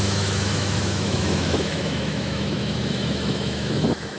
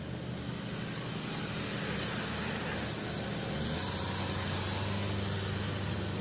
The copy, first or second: first